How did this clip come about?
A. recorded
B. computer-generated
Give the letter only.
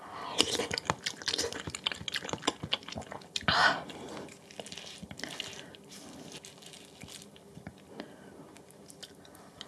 A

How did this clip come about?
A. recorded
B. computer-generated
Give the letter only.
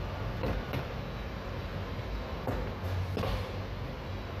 A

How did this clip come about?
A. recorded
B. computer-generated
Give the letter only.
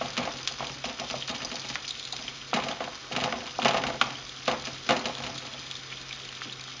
A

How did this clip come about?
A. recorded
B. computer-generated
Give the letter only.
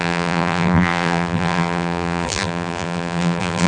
B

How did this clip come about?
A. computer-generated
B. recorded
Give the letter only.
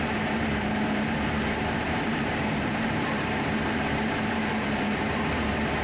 A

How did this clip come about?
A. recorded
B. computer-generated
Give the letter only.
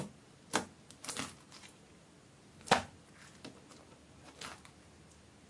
A